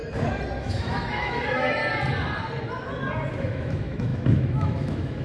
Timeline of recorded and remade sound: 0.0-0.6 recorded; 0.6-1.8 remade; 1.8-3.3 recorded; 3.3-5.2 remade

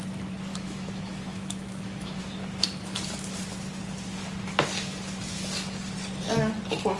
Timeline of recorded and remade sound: 0.0-0.5 recorded; 0.5-2.2 remade; 2.2-7.0 recorded

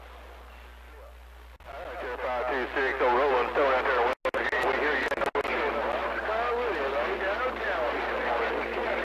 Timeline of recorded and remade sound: 0.0-9.0 recorded

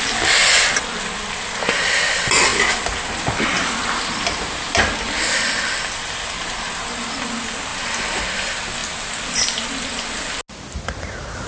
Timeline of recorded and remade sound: 0.0-11.5 recorded

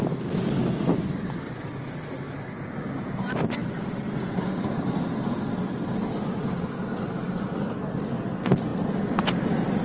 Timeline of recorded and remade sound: 0.0-9.8 recorded

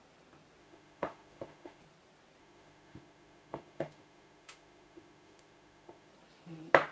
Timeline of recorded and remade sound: 0.0-0.6 recorded; 0.6-1.8 remade; 1.8-2.4 recorded; 2.4-6.1 remade; 6.1-6.9 recorded

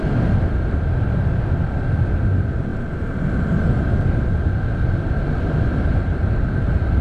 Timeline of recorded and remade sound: 0.0-7.0 recorded

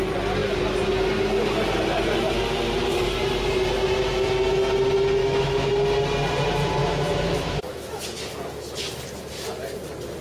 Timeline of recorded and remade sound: 0.0-5.2 recorded; 5.2-5.7 remade; 5.7-6.8 recorded; 6.8-8.0 remade; 8.0-10.2 recorded